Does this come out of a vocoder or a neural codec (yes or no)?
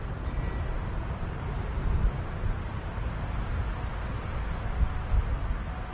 no